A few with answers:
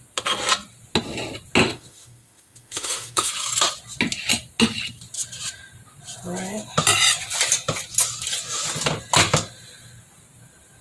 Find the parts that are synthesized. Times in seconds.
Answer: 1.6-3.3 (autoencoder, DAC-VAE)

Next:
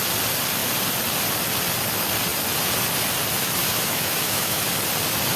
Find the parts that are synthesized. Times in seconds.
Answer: 3.6-4.7 (autoencoder, DAC-VAE)

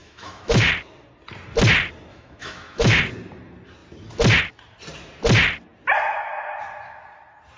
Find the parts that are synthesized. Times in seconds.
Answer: 0.0-0.7 (autoencoder, DAC-VAE); 2.1-3.0

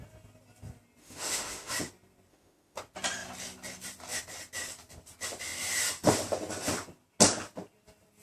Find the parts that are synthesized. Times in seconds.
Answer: 1.0-1.7 (autoencoder, DAC-VAE); 2.3-2.8

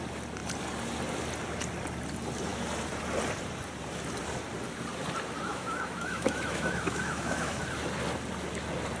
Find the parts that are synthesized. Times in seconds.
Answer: 5.5-7.6 (autoencoder, DAC-VAE)

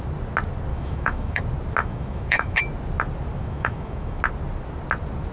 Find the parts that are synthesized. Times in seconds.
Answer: 0.7-1.4 (autoencoder, DAC-VAE); 1.8-2.6; 3.4-4.2

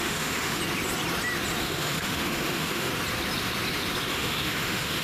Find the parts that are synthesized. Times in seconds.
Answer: 0.0-0.6 (autoencoder, DAC-VAE); 1.6-2.9; 4.1-5.0

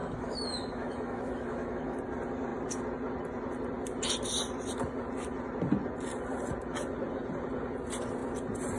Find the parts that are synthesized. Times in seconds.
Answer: 0.0-2.0 (autoencoder, DAC-VAE)